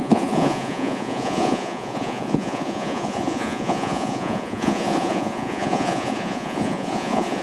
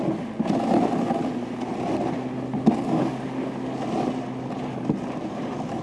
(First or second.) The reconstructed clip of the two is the first